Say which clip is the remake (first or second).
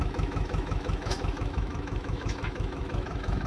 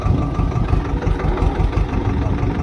first